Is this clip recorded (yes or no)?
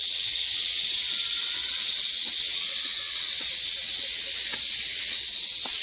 no